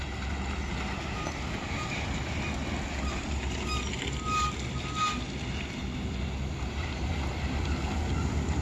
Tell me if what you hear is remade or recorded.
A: recorded